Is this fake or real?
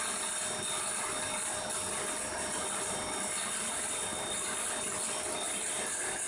real